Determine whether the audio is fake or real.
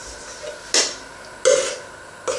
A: real